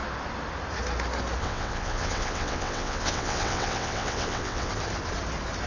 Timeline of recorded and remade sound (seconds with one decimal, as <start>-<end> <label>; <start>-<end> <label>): 0.0-1.4 recorded; 1.4-4.7 remade; 4.7-5.7 recorded